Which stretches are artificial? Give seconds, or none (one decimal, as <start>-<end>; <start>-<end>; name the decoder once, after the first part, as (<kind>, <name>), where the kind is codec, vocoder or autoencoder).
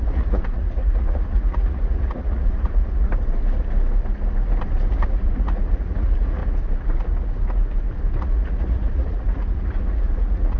0.0-3.1 (vocoder, Vocos); 4.9-6.4; 8.2-10.6